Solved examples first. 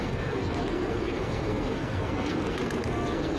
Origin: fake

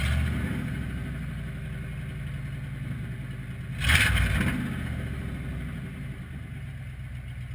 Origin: real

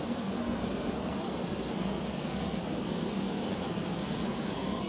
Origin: fake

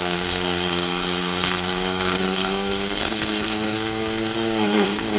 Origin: fake